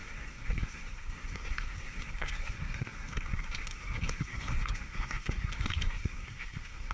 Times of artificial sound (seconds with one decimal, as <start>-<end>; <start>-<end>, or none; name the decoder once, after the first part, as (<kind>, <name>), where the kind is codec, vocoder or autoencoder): 0.0-6.9 (codec, SNAC)